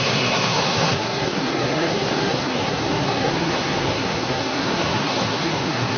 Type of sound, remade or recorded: remade